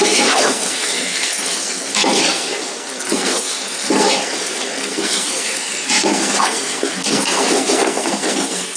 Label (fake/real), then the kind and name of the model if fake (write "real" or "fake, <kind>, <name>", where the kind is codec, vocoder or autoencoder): fake, codec, SNAC